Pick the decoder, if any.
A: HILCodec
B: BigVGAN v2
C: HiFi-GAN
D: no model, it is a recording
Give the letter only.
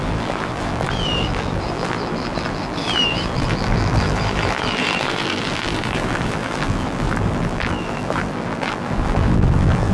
B